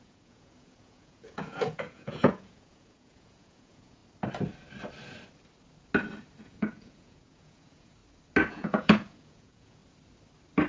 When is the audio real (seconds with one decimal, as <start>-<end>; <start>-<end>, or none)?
4.0-6.4; 8.0-8.5; 9.8-10.7